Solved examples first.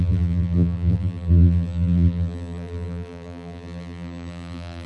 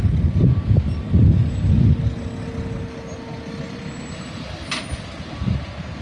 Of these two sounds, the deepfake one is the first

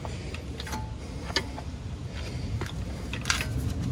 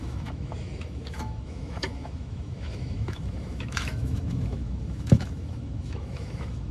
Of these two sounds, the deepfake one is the second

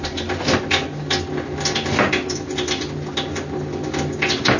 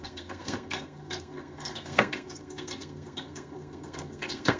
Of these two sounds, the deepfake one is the second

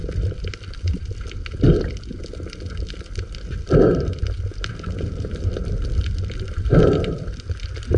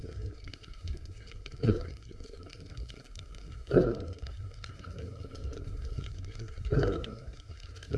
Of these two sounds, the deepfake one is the second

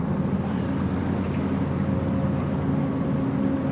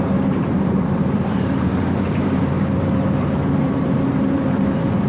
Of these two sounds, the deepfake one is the second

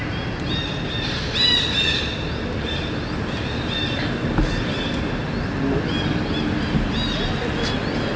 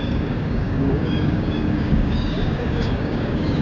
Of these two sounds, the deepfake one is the second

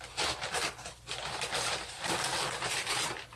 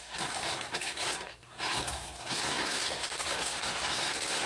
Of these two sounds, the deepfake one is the second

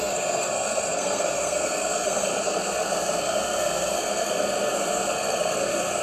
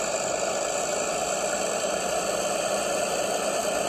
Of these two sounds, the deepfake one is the first